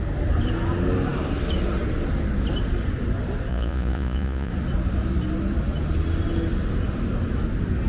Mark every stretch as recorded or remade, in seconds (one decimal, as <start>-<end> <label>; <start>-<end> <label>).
0.0-3.5 recorded; 3.5-4.5 remade; 4.5-7.9 recorded